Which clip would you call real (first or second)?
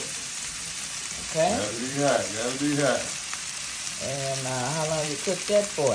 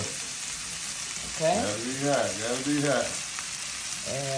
second